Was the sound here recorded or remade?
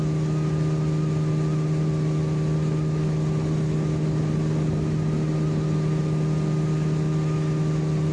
recorded